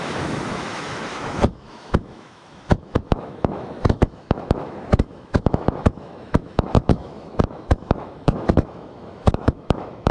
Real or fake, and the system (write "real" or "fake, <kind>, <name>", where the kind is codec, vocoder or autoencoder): fake, autoencoder, DAC-VAE